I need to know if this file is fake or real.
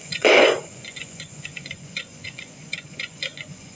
fake